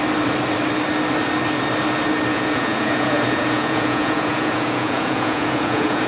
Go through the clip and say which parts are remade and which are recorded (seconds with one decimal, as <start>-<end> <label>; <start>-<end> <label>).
0.0-2.3 recorded; 2.3-6.1 remade